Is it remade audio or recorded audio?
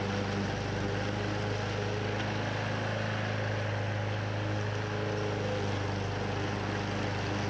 recorded